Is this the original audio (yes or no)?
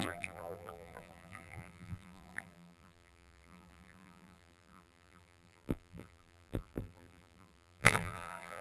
no